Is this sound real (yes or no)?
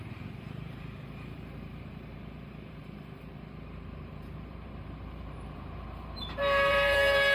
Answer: no